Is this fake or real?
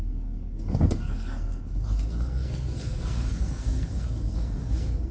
fake